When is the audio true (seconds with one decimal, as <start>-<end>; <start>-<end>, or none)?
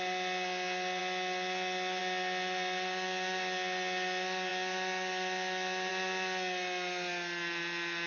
0.0-8.1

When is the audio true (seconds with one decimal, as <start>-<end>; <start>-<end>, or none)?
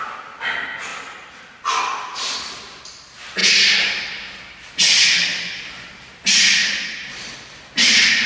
0.0-8.3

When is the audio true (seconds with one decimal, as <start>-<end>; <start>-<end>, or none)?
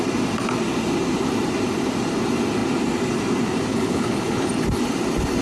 0.0-3.7; 4.5-5.4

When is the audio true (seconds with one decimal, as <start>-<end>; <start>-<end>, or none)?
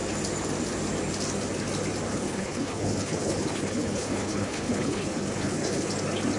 0.0-2.1; 5.9-6.4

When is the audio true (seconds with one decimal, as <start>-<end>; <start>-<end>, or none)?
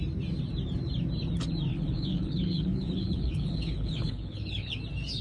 0.0-1.7; 4.8-5.2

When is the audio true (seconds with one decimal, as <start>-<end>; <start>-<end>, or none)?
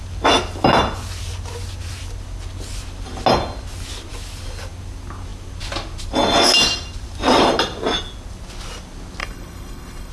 0.0-9.2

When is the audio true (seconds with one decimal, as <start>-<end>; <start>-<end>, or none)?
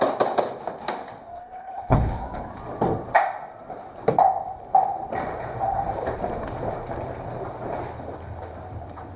0.0-1.4; 2.1-9.2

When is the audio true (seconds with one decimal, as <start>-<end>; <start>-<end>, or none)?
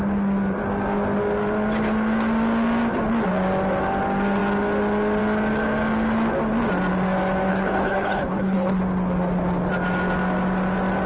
0.0-7.5; 8.8-11.1